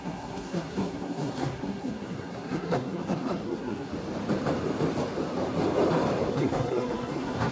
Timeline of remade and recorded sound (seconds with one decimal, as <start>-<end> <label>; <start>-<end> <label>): 0.0-3.9 remade; 3.9-6.3 recorded; 6.3-7.5 remade